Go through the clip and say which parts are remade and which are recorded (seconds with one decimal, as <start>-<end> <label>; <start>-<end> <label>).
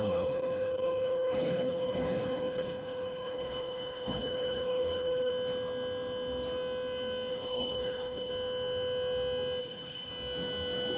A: 0.0-5.3 remade; 5.3-7.3 recorded; 7.3-8.3 remade; 8.3-9.6 recorded; 9.6-10.1 remade; 10.1-11.0 recorded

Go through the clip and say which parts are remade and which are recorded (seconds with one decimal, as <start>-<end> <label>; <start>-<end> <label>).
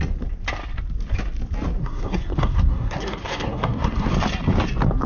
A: 0.0-1.8 recorded; 1.8-4.1 remade; 4.1-5.1 recorded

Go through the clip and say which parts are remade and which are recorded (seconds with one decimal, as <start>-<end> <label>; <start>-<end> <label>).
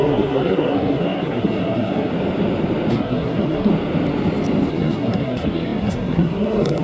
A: 0.0-2.1 remade; 2.1-2.9 recorded; 2.9-3.7 remade; 3.7-4.7 recorded; 4.7-6.8 remade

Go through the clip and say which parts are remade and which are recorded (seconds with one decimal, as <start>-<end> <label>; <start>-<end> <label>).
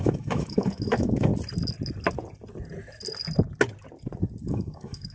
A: 0.0-1.3 remade; 1.3-4.4 recorded; 4.4-5.1 remade